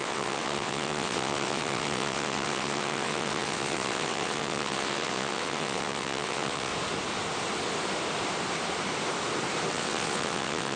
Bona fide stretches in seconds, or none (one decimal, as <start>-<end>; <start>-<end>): 6.7-9.7